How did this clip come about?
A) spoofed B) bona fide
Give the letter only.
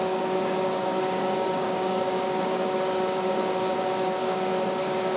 A